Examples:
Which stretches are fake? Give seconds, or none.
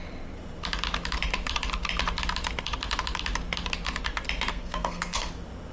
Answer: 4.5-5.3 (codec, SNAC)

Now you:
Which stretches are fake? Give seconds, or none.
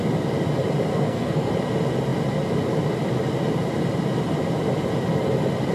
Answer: 0.9-1.5 (codec, SNAC)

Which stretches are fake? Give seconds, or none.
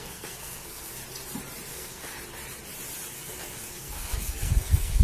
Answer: 0.0-1.0 (codec, SNAC); 1.7-2.1; 3.1-5.0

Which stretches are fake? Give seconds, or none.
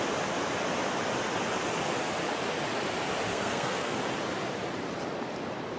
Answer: 3.3-4.0 (codec, SNAC)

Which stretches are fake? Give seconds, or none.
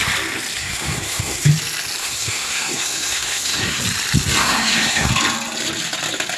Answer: 0.6-1.5 (codec, SNAC); 2.0-3.8; 4.4-5.1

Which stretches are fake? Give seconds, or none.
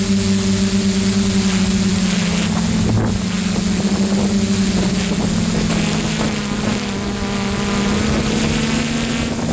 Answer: none